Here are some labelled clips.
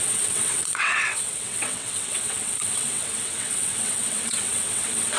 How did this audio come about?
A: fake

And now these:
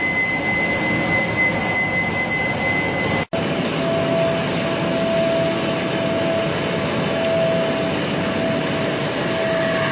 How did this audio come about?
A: real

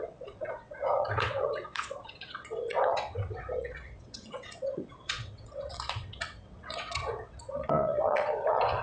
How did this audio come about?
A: fake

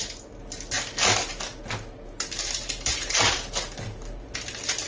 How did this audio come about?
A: real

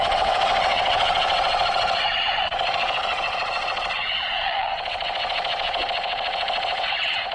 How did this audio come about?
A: fake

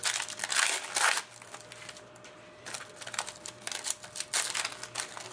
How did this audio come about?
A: real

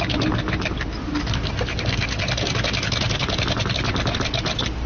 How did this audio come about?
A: real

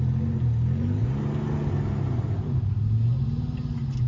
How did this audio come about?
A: real